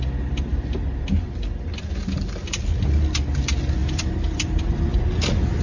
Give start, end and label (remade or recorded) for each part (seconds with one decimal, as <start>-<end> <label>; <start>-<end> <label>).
0.0-3.8 recorded; 3.8-5.1 remade; 5.1-5.6 recorded

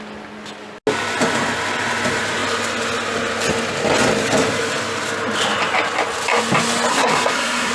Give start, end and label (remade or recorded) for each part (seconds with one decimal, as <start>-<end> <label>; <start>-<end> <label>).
0.0-6.9 recorded; 6.9-7.7 remade